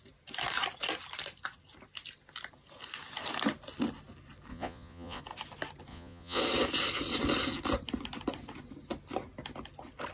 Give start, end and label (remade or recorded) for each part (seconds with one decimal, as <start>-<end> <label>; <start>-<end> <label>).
0.0-4.5 recorded; 4.5-5.2 remade; 5.2-5.9 recorded; 5.9-6.4 remade; 6.4-10.1 recorded